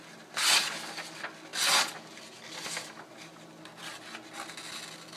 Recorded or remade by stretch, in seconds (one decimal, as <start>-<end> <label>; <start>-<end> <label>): 0.0-5.2 recorded